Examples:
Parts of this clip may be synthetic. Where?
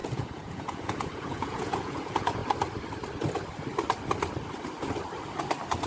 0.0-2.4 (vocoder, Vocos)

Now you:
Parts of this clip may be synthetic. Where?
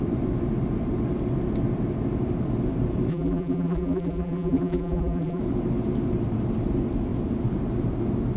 3.1-5.4 (vocoder, BigVGAN v2)